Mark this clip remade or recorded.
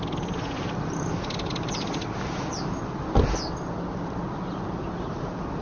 recorded